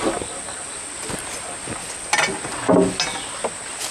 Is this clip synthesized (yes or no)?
no